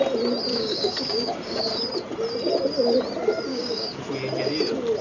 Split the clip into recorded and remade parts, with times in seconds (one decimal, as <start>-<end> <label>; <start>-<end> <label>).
0.0-0.5 recorded; 0.5-1.6 remade; 1.6-3.5 recorded; 3.5-4.0 remade; 4.0-5.0 recorded